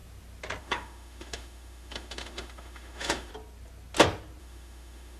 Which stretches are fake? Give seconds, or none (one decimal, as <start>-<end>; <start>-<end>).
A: 0.6-3.3; 4.4-5.2

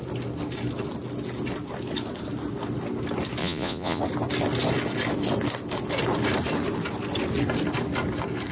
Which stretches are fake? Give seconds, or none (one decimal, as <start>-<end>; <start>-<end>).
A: 3.4-4.0

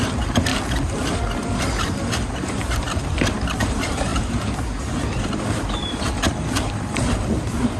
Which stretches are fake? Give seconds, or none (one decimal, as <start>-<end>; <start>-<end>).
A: 0.0-0.5; 2.8-4.1; 5.2-7.8

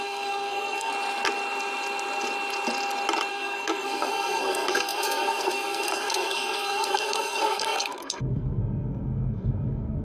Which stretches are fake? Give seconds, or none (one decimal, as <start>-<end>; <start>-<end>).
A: 0.0-0.9; 3.3-10.0

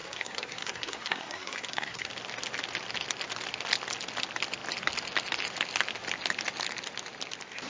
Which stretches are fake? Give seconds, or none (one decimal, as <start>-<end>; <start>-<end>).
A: 0.0-2.1

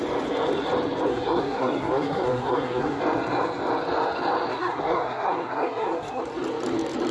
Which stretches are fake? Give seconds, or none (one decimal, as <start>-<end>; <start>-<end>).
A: 1.1-3.0; 4.5-6.2